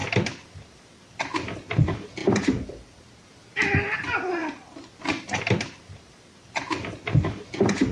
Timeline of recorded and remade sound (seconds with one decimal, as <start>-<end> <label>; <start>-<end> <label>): 0.0-7.9 recorded